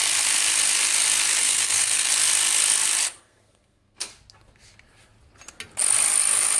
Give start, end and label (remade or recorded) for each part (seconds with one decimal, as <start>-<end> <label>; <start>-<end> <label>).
0.0-1.4 recorded; 1.4-2.1 remade; 2.1-3.2 recorded; 3.2-4.1 remade; 4.1-6.6 recorded